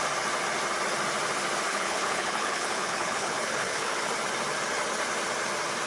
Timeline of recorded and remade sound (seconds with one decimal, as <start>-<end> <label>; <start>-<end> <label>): 0.0-1.7 recorded; 1.7-4.1 remade; 4.1-5.9 recorded